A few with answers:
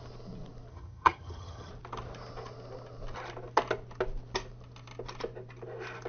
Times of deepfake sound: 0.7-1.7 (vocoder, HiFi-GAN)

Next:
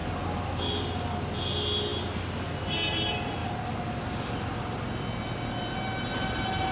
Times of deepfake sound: none